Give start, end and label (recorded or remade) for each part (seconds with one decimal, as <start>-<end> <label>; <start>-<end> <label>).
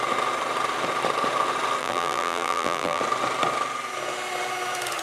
0.0-1.8 recorded; 1.8-3.0 remade; 3.0-5.0 recorded